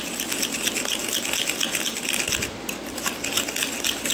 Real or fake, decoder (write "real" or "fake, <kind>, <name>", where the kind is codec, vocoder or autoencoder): real